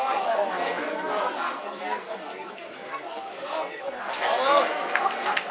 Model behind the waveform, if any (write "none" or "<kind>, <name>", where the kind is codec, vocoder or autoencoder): codec, SNAC